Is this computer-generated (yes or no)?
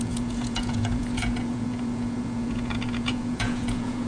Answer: yes